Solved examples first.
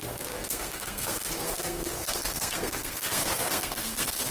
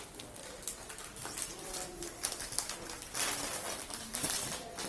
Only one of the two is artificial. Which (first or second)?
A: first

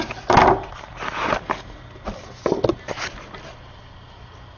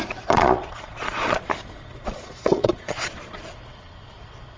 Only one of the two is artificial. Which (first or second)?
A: second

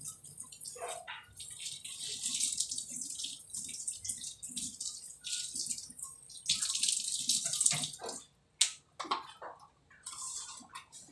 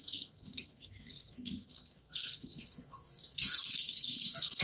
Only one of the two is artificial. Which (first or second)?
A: second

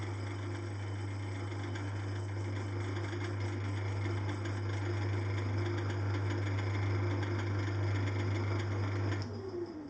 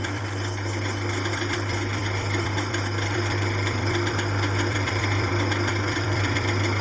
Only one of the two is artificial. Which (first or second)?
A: second